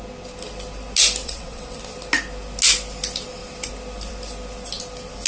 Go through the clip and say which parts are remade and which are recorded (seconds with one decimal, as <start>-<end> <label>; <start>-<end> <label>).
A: 0.0-1.2 recorded; 1.2-1.8 remade; 1.8-5.3 recorded